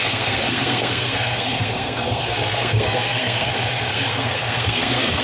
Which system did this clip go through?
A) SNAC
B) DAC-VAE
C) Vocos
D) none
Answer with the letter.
A